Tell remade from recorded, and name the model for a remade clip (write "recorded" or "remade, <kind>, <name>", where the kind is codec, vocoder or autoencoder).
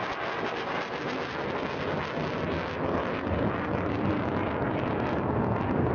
recorded